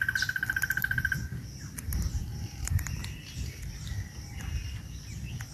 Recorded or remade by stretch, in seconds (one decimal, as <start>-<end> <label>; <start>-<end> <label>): 0.0-2.2 recorded; 2.2-3.0 remade; 3.0-5.5 recorded